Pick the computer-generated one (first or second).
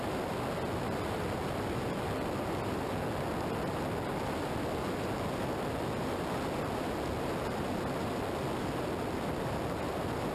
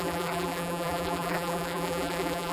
second